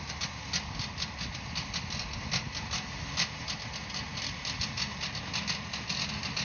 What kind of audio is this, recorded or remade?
recorded